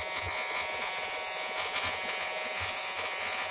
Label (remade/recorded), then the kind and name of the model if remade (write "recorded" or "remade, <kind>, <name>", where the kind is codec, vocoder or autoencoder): remade, vocoder, Vocos